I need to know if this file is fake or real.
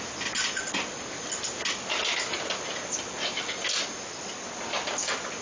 real